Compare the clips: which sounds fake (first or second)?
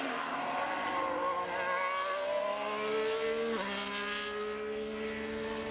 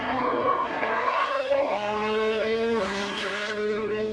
second